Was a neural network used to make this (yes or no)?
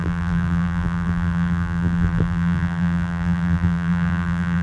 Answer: yes